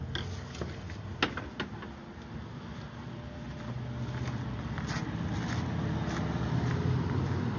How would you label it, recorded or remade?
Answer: recorded